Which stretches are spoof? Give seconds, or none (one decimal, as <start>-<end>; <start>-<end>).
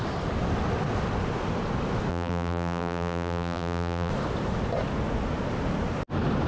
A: 2.1-4.1